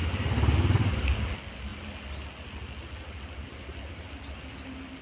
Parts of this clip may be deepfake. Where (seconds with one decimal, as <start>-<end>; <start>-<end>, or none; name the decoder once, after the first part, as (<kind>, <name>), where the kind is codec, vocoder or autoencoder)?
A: none